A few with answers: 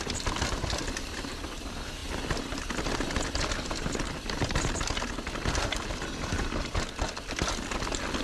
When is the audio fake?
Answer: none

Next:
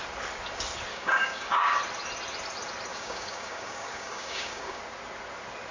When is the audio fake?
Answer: 0.9-1.8 (codec, DAC); 2.9-4.8

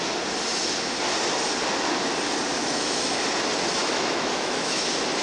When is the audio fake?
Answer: 2.5-3.3 (autoencoder, DAC-VAE); 3.8-4.8